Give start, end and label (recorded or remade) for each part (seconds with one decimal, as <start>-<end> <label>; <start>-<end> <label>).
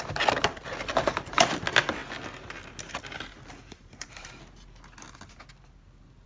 0.0-0.8 recorded; 0.8-1.4 remade; 1.4-3.6 recorded; 3.6-4.4 remade; 4.4-6.3 recorded